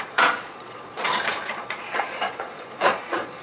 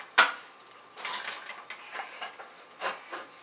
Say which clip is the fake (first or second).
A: first